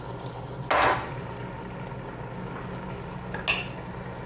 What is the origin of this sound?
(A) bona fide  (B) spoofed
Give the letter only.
A